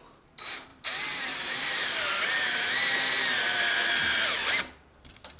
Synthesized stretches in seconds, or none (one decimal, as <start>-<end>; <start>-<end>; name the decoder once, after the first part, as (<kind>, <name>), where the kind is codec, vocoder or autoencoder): 0.7-3.6 (vocoder, BigVGAN v2)